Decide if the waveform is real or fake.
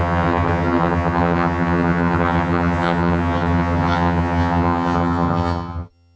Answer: fake